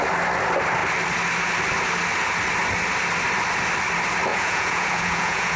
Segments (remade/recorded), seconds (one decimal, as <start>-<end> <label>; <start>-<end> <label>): 0.0-4.3 recorded; 4.3-5.6 remade